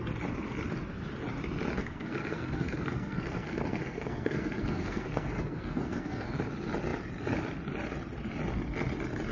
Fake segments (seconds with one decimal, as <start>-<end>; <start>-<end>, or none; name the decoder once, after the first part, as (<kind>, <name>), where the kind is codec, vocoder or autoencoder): 1.8-6.4 (codec, SNAC)